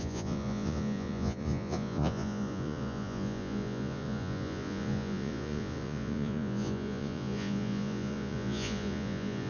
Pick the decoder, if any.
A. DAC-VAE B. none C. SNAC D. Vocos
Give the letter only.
D